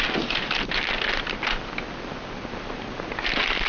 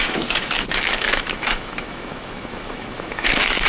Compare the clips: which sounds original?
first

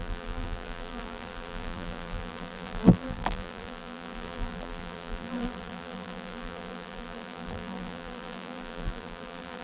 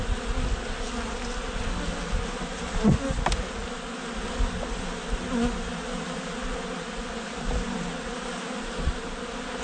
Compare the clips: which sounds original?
second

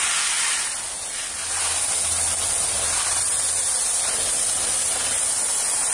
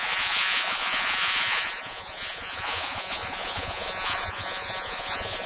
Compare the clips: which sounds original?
first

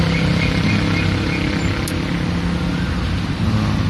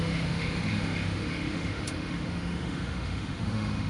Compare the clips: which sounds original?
first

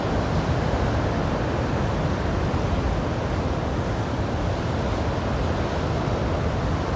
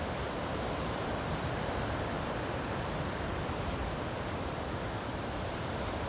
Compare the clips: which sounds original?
first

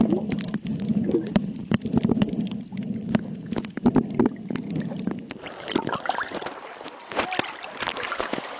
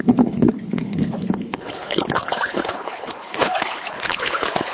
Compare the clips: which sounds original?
first